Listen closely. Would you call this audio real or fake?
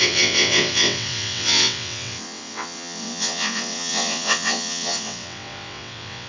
fake